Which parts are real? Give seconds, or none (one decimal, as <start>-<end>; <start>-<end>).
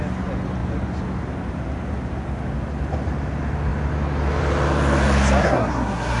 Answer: 0.0-5.4